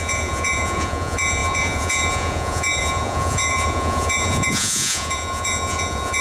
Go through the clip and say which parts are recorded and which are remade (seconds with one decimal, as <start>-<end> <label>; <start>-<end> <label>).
0.0-6.2 remade